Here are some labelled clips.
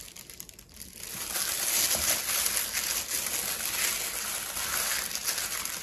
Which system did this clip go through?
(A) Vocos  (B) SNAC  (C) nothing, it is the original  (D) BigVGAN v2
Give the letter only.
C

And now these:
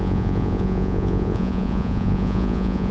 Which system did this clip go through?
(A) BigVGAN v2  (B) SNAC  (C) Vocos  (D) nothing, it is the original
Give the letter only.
C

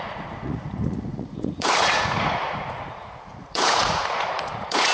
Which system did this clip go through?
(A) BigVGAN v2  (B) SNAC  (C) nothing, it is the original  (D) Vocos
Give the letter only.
D